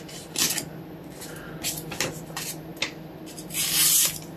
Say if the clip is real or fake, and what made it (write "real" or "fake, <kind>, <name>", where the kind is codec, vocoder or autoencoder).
real